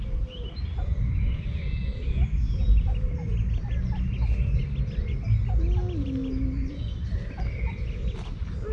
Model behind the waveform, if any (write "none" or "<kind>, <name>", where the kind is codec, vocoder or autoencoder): none